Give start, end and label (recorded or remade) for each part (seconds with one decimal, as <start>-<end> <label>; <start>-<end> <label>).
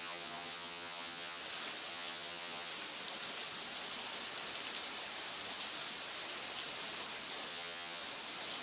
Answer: 0.0-1.4 remade; 1.4-1.9 recorded; 1.9-2.7 remade; 2.7-7.5 recorded; 7.5-8.0 remade; 8.0-8.6 recorded